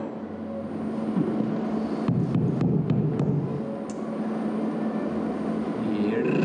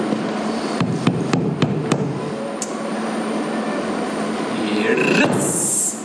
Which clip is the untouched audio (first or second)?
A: first